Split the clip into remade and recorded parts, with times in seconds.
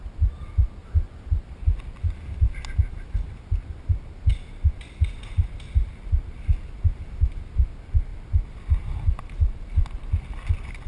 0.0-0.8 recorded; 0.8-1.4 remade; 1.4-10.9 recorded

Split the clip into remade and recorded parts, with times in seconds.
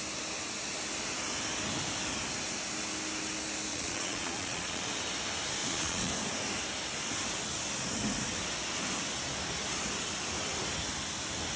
0.0-3.7 recorded; 3.7-4.9 remade; 4.9-5.6 recorded; 5.6-6.1 remade; 6.1-11.6 recorded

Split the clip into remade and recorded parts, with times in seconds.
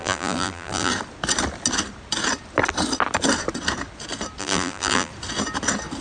0.0-0.9 remade; 0.9-4.4 recorded; 4.4-5.1 remade; 5.1-6.0 recorded